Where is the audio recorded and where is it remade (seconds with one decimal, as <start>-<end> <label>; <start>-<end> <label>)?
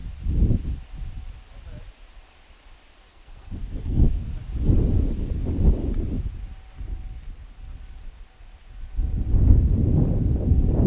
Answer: 0.0-3.1 recorded; 3.1-4.3 remade; 4.3-10.9 recorded